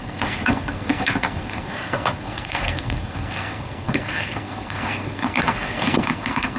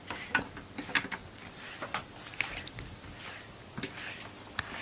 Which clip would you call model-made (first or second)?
first